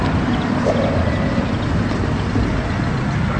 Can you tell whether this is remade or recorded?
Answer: recorded